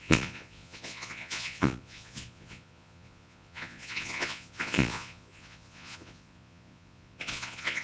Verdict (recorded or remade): remade